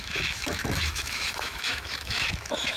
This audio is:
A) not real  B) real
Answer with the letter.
A